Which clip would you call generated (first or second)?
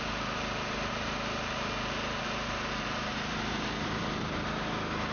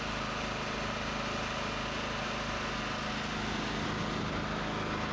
first